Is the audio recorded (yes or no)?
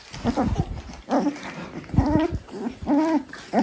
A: yes